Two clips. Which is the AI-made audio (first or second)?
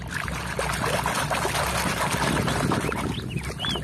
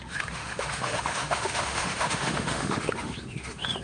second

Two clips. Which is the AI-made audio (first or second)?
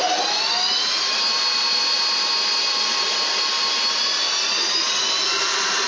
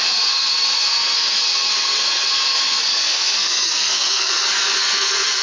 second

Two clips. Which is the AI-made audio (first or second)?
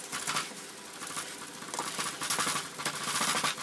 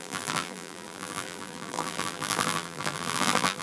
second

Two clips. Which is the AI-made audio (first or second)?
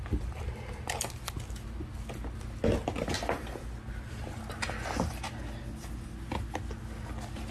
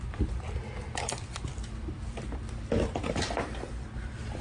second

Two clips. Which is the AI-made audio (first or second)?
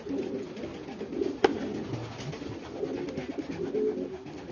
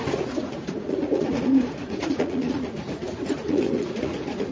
second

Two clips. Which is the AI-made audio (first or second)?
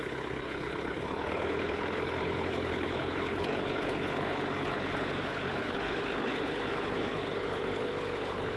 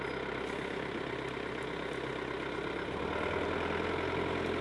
first